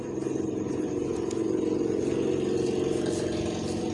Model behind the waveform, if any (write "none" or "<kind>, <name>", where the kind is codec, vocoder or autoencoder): none